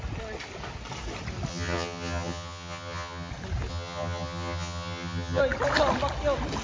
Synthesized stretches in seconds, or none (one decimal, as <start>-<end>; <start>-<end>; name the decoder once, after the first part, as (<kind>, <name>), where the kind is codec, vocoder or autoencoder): 1.5-3.3 (vocoder, HiFi-GAN); 3.7-5.4